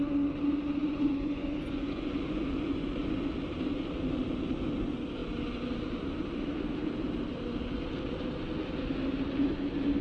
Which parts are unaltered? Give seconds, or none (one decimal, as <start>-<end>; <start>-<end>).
0.0-0.8; 3.1-10.0